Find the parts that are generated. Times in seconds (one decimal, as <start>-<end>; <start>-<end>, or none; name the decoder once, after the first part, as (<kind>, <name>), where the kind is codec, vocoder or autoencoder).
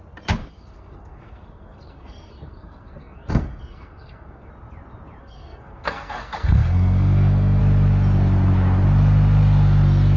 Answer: 0.4-4.5 (codec, SNAC); 5.2-7.6